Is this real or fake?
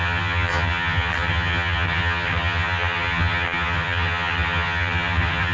fake